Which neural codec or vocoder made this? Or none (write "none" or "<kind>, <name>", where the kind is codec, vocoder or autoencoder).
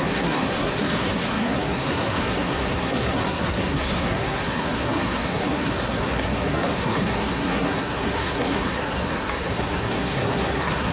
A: codec, SNAC